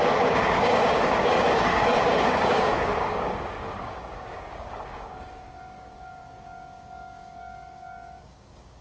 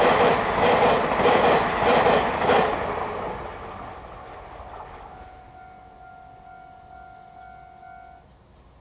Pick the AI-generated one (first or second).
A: first